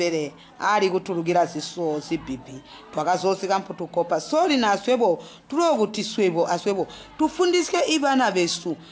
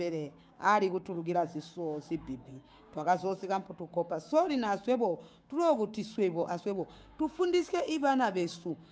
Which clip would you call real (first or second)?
first